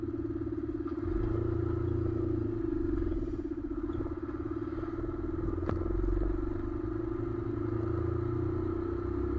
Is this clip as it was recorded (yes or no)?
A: yes